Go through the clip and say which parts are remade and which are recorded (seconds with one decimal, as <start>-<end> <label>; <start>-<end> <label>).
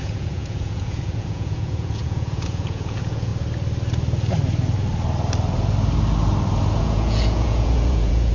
0.0-3.3 remade; 3.3-6.8 recorded; 6.8-8.3 remade